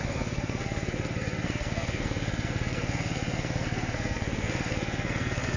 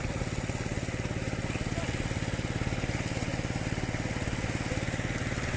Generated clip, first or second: first